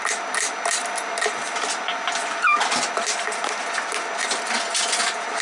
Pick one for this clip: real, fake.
real